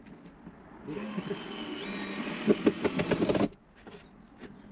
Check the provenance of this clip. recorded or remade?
recorded